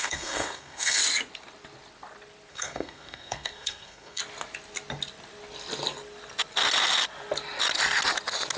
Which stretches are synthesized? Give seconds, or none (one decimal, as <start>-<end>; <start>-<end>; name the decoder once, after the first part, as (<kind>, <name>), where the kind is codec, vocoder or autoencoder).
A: 0.0-1.0 (codec, SNAC); 2.5-4.2